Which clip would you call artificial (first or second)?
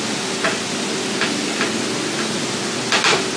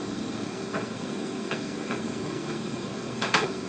second